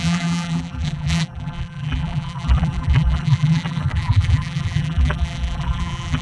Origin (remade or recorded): remade